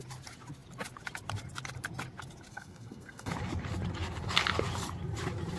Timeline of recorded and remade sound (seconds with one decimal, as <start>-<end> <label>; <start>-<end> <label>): 0.0-2.5 recorded; 2.5-3.3 remade; 3.3-5.6 recorded